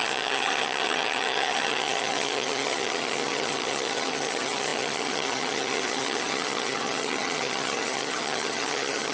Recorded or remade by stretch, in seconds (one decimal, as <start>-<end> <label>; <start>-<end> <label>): 0.0-9.1 remade